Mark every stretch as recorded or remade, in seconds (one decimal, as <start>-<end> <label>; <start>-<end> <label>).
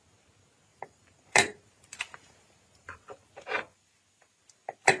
0.0-0.7 recorded; 0.7-3.3 remade; 3.3-5.0 recorded